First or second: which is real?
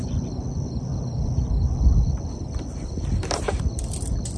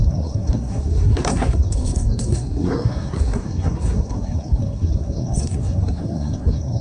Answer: first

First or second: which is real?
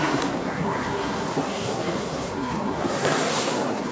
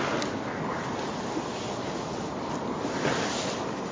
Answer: second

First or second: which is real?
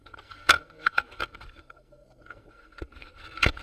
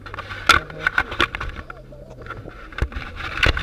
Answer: second